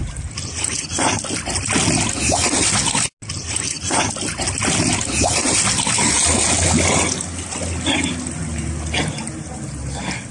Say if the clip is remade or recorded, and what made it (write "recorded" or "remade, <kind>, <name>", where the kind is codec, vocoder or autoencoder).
recorded